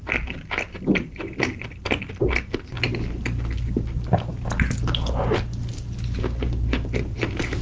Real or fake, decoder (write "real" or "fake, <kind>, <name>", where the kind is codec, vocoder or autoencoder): real